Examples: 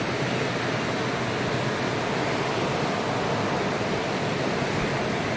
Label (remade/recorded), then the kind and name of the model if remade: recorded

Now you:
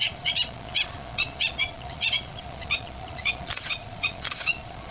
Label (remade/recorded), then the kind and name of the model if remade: remade, vocoder, Vocos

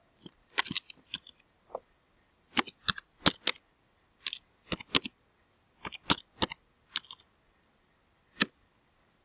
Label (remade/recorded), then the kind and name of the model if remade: recorded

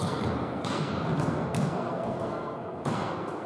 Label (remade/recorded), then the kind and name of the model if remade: remade, codec, SNAC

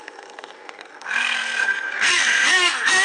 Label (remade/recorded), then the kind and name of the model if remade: remade, codec, SNAC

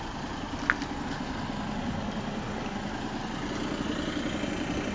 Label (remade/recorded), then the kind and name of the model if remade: recorded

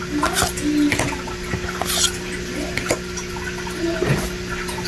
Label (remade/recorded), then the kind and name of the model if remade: recorded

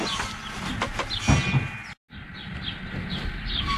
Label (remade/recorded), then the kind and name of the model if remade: recorded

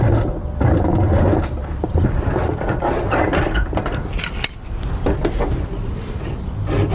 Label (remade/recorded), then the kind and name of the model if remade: recorded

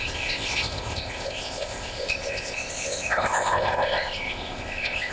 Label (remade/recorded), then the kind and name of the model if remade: remade, codec, ZipCodec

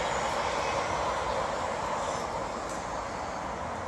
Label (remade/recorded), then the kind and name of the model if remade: recorded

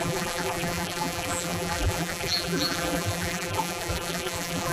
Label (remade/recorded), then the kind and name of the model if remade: remade, vocoder, BigVGAN v2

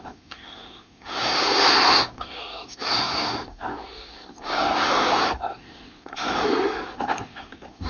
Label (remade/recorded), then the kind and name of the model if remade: remade, codec, SNAC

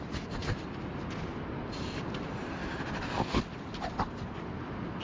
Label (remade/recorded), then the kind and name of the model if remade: recorded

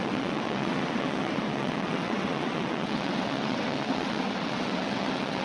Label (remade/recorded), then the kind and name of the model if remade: remade, vocoder, WaveNeXt